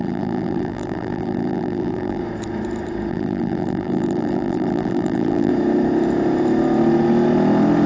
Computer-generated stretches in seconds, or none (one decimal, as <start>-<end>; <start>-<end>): 0.0-2.2; 3.1-5.5